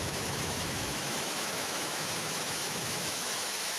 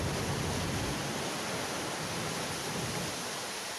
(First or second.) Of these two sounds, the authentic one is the second